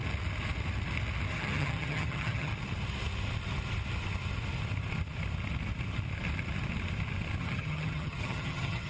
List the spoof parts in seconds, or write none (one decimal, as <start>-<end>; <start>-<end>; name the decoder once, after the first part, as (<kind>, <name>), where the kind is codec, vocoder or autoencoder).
1.3-2.5 (vocoder, HiFi-GAN); 7.4-8.9